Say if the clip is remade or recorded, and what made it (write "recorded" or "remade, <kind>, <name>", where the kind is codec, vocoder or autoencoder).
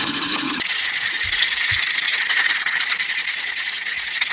remade, vocoder, Vocos